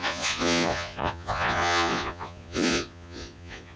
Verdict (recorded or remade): remade